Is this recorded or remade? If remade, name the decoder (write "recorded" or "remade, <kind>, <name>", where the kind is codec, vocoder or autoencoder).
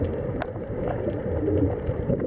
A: remade, vocoder, BigVGAN v2